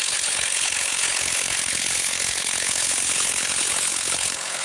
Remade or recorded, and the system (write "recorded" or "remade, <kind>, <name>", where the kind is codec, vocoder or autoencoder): remade, codec, HILCodec